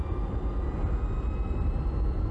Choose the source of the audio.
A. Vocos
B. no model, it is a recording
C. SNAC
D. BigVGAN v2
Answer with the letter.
B